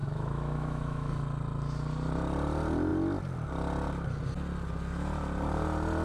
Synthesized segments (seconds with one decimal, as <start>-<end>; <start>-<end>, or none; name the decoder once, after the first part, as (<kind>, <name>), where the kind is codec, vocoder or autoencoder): 0.0-1.1 (autoencoder, DAC-VAE)